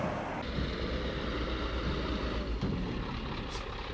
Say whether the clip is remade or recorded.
recorded